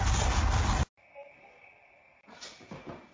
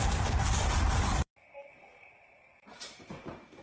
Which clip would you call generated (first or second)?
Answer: second